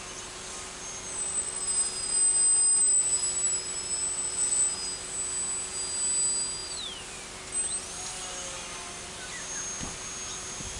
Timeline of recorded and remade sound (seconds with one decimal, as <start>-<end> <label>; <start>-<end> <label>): 0.0-10.8 recorded